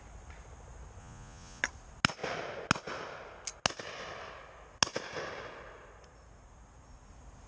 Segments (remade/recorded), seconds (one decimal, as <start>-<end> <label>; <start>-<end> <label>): 0.0-1.0 recorded; 1.0-1.6 remade; 1.6-7.5 recorded